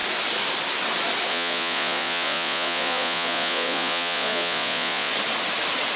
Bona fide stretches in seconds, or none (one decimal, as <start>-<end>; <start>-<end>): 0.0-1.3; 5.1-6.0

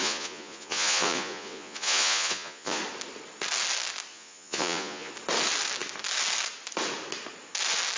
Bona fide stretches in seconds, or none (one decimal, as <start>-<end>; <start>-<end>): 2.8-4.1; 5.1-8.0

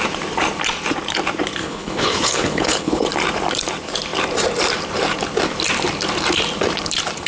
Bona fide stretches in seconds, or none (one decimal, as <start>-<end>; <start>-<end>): 0.0-1.6; 3.0-7.3

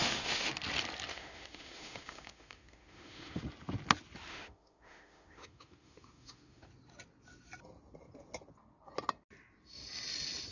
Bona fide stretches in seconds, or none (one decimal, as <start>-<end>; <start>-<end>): 0.5-1.1; 3.4-4.3; 6.7-10.5

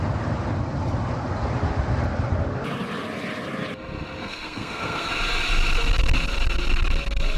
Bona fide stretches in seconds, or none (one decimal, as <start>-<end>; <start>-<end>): 0.0-4.2; 5.1-7.4

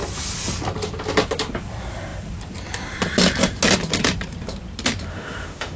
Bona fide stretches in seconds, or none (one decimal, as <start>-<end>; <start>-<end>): 0.0-5.1